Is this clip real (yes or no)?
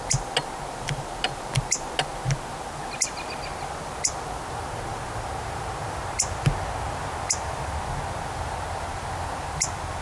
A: yes